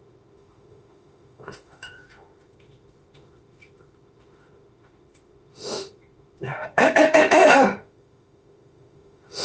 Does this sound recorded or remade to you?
remade